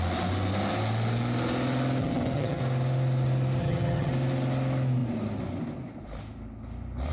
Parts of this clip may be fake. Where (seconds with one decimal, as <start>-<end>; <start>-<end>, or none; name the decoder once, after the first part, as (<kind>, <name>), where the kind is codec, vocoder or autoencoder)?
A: 2.0-2.6 (vocoder, HiFi-GAN); 3.6-4.1